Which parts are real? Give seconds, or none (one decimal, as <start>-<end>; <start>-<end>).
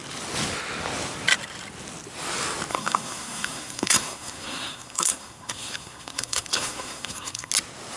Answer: 0.0-2.7; 7.5-8.0